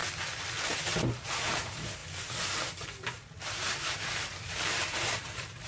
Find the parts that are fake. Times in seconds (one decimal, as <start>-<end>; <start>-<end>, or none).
1.2-2.0; 3.5-5.7